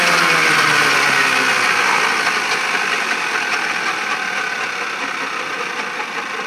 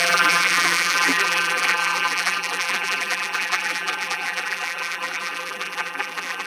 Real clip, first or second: first